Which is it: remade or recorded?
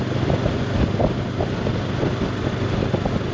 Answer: recorded